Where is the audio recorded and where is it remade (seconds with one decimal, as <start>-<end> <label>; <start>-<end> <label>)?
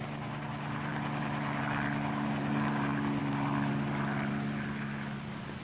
0.0-0.9 recorded; 0.9-1.6 remade; 1.6-3.2 recorded; 3.2-5.6 remade